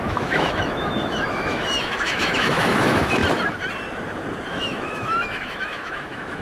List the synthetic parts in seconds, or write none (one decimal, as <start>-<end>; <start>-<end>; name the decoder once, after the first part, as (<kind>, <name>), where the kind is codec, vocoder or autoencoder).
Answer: 0.0-3.2 (autoencoder, DAC-VAE); 4.5-6.4